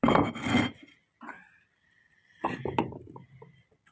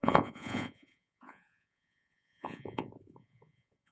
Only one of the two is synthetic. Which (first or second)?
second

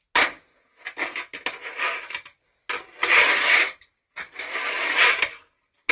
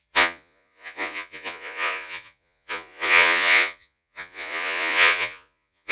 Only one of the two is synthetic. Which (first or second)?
second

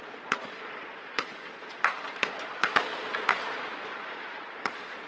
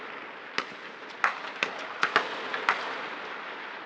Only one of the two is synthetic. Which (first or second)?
first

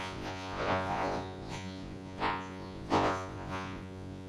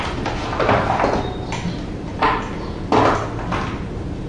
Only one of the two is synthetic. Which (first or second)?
first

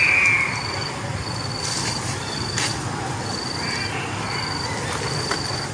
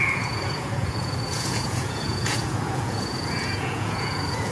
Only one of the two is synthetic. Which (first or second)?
second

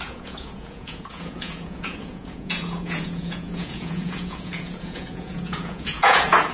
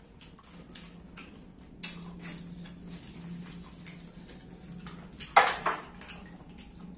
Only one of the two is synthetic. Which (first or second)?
first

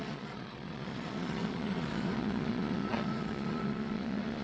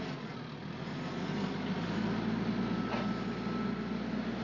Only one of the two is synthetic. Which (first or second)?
first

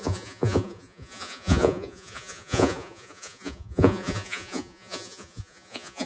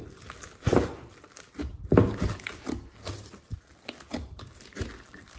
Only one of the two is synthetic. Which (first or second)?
first